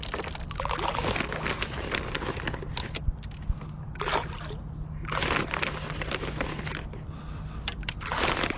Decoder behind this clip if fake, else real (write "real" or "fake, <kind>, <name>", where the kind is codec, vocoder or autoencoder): real